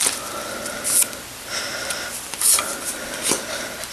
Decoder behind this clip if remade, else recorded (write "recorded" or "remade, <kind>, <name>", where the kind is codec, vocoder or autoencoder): recorded